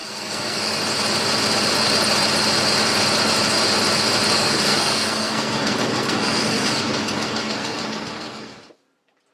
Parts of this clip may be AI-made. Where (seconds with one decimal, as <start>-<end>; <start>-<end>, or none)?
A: 0.0-0.8; 4.4-8.6